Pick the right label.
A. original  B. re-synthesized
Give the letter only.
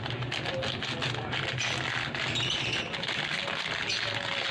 A